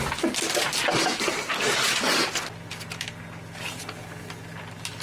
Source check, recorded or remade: recorded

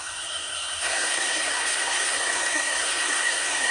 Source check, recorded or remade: remade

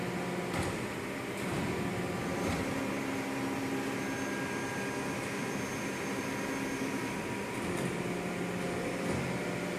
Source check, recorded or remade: recorded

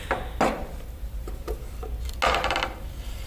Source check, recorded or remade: recorded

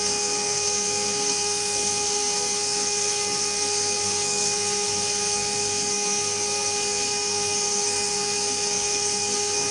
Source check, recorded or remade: remade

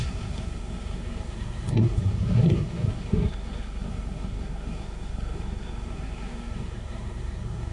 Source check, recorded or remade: remade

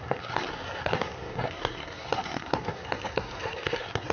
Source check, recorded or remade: remade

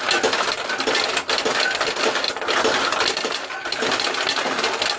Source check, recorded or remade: recorded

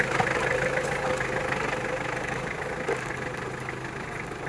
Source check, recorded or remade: recorded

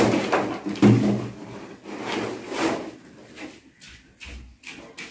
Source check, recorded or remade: recorded